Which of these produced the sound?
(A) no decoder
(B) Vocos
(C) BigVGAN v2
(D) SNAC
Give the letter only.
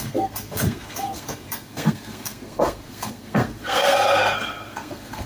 D